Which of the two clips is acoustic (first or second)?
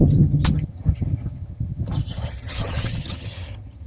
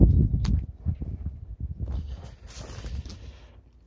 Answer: second